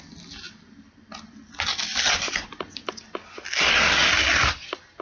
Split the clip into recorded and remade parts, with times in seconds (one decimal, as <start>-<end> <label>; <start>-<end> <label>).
0.0-1.9 recorded; 1.9-5.0 remade